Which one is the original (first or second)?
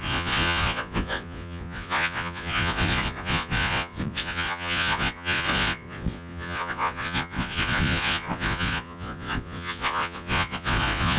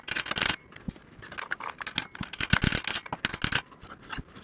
second